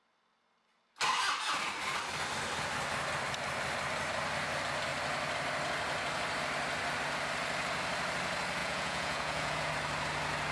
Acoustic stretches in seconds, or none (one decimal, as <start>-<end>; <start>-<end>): 0.0-8.6; 9.7-10.5